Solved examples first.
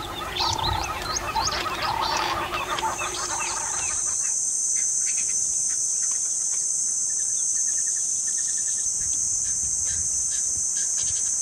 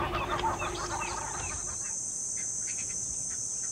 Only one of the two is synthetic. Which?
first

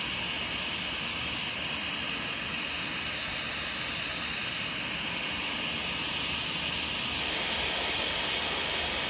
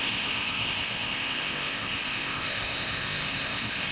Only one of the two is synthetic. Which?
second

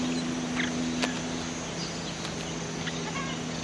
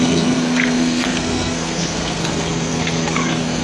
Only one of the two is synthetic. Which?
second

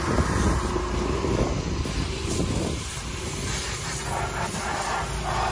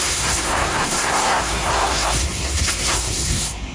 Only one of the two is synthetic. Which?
second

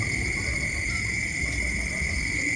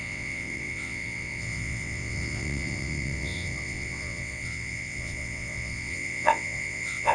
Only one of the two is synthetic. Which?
second